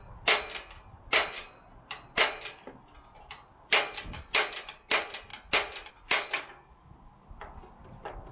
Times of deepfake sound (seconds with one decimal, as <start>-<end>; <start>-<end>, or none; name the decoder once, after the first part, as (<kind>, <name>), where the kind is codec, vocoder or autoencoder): none